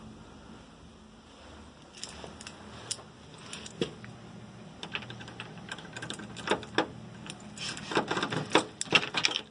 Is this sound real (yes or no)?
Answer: yes